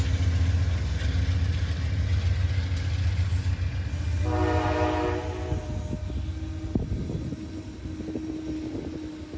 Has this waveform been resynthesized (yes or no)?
no